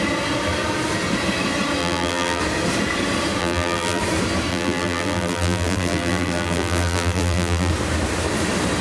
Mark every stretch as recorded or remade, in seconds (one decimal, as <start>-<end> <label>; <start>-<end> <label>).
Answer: 0.0-1.8 recorded; 1.8-2.4 remade; 2.4-3.4 recorded; 3.4-4.0 remade; 4.0-4.5 recorded; 4.5-7.7 remade; 7.7-8.8 recorded

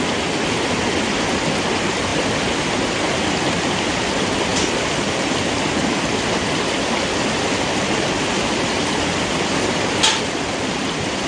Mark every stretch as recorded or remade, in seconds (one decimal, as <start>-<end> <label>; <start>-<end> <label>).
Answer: 0.0-2.1 recorded; 2.1-3.5 remade; 3.5-4.5 recorded; 4.5-5.5 remade; 5.5-11.3 recorded

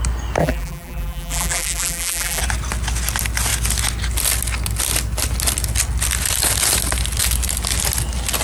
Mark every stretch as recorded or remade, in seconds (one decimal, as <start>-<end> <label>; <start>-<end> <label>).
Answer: 0.0-0.4 recorded; 0.4-2.4 remade; 2.4-8.4 recorded

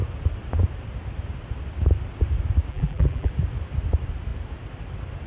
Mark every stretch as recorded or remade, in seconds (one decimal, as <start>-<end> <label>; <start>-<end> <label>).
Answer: 0.0-2.7 recorded; 2.7-3.3 remade; 3.3-5.3 recorded

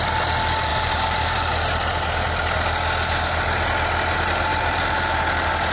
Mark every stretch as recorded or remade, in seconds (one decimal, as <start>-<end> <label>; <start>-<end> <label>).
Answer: 0.0-0.7 recorded; 0.7-1.5 remade; 1.5-4.5 recorded; 4.5-5.2 remade; 5.2-5.7 recorded